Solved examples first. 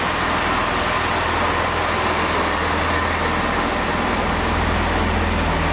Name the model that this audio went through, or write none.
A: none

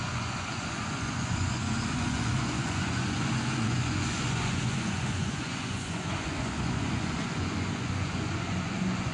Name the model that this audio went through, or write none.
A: vocoder, Vocos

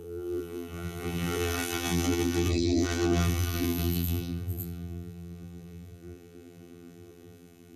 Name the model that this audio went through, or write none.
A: vocoder, BigVGAN v2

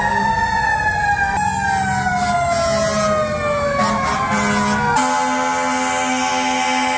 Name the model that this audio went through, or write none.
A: none